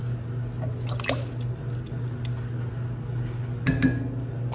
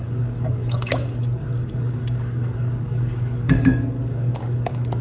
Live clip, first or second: first